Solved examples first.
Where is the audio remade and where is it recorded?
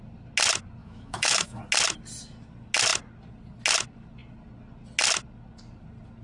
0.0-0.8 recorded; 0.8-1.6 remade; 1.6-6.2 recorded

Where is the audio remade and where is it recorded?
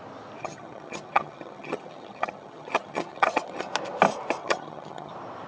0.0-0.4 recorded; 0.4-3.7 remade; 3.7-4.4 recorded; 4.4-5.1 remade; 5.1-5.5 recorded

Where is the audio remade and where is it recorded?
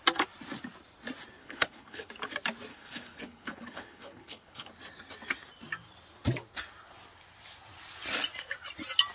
0.0-1.4 recorded; 1.4-2.1 remade; 2.1-2.7 recorded; 2.7-4.7 remade; 4.7-9.1 recorded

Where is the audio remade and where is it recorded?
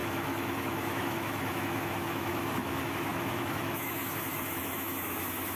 0.0-5.6 remade